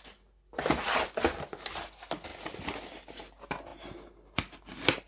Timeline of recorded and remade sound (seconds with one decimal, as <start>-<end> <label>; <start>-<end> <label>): 0.0-5.1 recorded

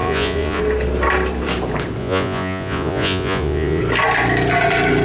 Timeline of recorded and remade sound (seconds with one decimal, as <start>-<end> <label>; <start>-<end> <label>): 0.0-0.6 remade; 0.6-2.0 recorded; 2.0-3.8 remade; 3.8-5.0 recorded

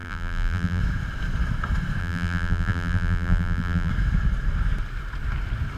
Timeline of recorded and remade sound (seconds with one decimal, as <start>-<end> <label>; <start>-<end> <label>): 0.0-0.8 remade; 0.8-2.0 recorded; 2.0-3.9 remade; 3.9-5.8 recorded

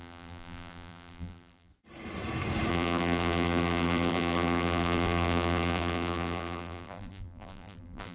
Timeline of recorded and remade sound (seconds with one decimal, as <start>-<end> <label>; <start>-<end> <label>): 0.0-1.7 remade; 1.7-2.7 recorded; 2.7-8.1 remade